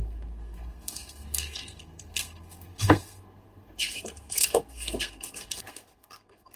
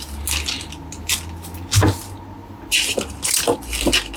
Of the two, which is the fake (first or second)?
first